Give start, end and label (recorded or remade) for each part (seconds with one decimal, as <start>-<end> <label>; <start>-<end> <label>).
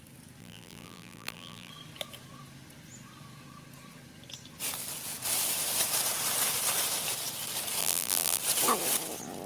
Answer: 0.0-0.4 recorded; 0.4-1.7 remade; 1.7-7.8 recorded; 7.8-8.4 remade; 8.4-9.5 recorded